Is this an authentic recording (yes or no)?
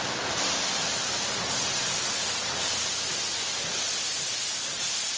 yes